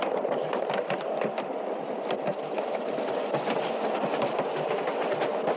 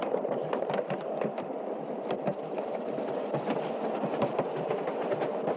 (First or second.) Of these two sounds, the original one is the first